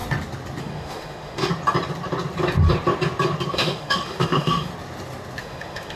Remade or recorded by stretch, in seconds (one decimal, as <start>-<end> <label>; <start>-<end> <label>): 0.0-0.6 recorded; 0.6-1.5 remade; 1.5-3.5 recorded; 3.5-4.7 remade; 4.7-5.4 recorded; 5.4-6.0 remade